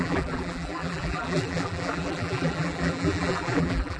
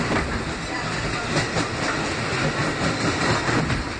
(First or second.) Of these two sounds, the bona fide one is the second